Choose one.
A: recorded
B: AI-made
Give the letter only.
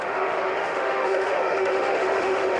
B